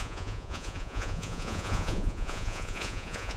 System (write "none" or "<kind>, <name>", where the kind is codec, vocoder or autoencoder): vocoder, Vocos